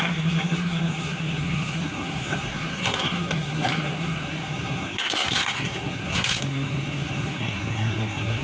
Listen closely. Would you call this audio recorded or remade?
remade